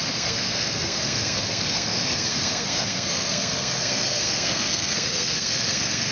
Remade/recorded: remade